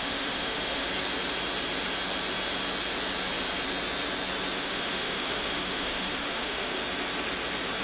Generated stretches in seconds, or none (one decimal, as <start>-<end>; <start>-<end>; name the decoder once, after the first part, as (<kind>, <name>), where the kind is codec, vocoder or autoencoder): 0.0-0.9 (autoencoder, DAC-VAE); 4.6-6.8